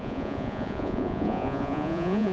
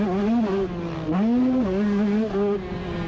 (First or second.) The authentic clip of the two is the second